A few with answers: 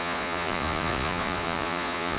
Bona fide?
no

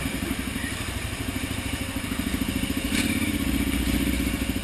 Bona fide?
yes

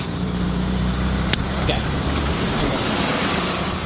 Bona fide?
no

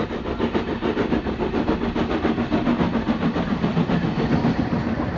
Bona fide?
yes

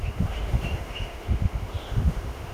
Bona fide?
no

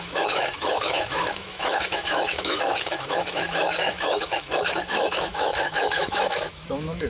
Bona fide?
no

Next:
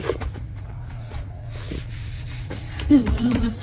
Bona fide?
no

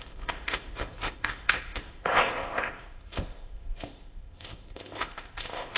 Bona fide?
no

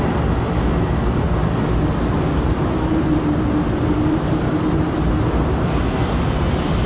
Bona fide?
yes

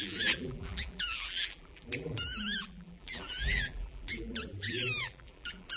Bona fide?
no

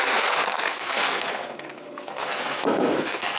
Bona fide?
no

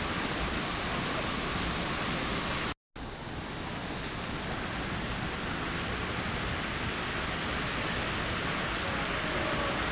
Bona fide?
yes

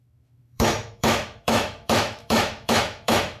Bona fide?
no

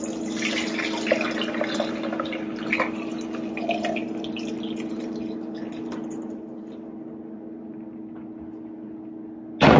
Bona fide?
yes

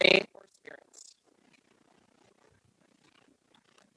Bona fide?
yes